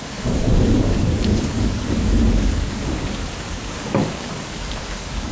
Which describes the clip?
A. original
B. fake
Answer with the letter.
B